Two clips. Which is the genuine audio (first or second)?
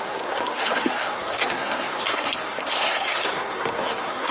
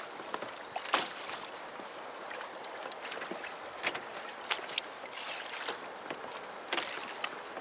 second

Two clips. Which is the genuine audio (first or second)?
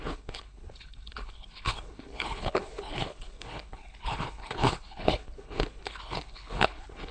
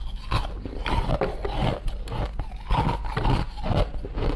second